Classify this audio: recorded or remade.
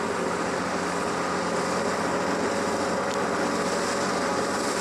recorded